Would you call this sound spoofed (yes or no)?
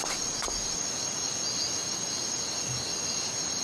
no